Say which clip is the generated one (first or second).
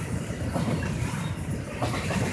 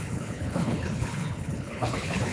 second